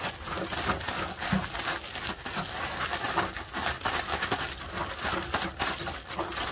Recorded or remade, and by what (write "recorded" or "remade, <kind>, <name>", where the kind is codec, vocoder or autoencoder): recorded